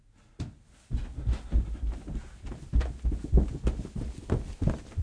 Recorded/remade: recorded